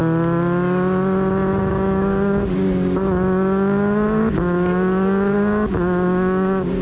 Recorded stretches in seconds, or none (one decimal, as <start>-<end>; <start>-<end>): 0.0-1.6